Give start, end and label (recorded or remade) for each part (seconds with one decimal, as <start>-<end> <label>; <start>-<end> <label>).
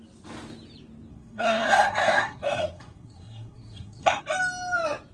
0.0-1.1 recorded; 1.1-4.2 remade; 4.2-5.1 recorded